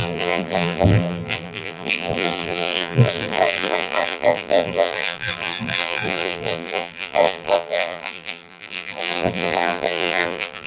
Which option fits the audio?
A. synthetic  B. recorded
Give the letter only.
A